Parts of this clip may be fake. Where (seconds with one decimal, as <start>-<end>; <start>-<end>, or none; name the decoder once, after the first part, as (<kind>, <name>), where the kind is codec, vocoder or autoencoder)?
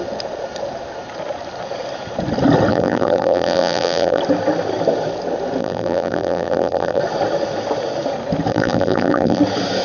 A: 2.7-4.2 (vocoder, BigVGAN v2); 5.6-7.0; 8.5-9.4